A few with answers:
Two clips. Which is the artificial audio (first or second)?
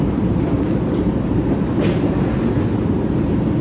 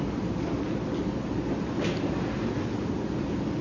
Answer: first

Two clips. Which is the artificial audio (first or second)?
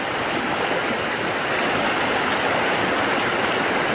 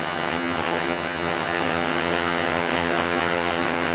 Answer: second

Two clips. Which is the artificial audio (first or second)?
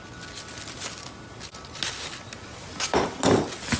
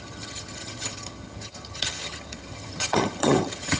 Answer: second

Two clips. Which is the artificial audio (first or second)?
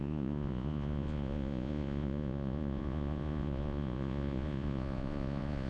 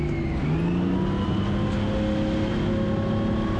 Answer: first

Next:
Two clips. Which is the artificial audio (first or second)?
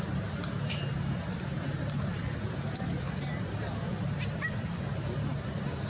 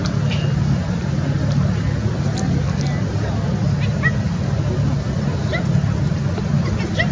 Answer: first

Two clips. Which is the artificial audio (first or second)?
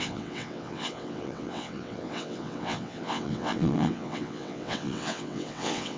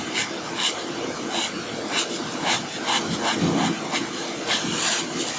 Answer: first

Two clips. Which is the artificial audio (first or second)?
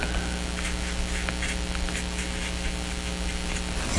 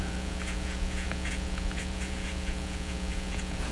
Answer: second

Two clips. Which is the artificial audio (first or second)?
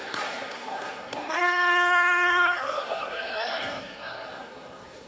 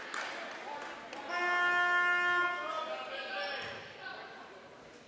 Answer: first